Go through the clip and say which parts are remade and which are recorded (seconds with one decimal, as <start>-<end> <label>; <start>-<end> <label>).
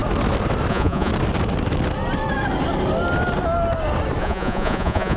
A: 0.0-0.7 recorded; 0.7-1.1 remade; 1.1-4.2 recorded; 4.2-5.2 remade